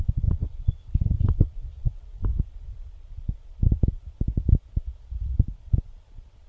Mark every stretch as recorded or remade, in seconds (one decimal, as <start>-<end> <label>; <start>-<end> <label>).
0.0-2.3 remade; 2.3-6.5 recorded